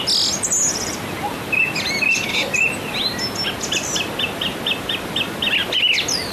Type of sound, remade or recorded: recorded